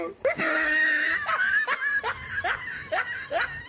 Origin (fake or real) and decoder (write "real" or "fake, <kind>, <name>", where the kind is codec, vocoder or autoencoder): real